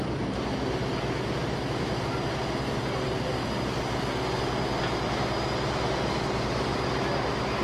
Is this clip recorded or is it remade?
recorded